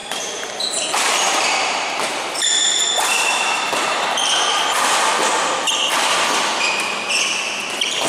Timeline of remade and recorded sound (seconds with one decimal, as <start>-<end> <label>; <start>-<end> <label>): 0.0-4.6 remade; 4.6-8.1 recorded